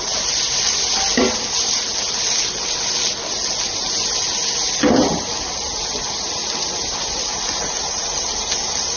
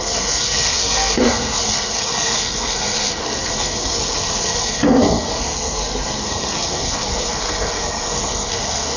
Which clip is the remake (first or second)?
second